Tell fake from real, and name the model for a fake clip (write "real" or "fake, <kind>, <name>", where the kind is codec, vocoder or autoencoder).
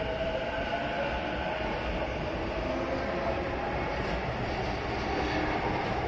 real